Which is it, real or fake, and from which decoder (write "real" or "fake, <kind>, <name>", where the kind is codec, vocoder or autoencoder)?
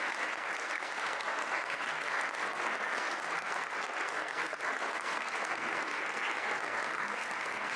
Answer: fake, codec, SNAC